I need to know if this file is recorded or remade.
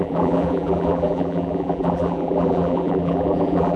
remade